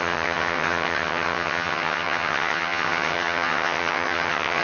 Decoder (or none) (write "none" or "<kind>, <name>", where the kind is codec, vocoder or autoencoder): vocoder, HiFi-GAN